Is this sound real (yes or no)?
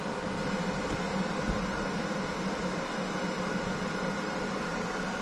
yes